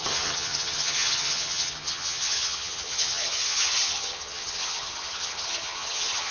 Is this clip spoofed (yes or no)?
yes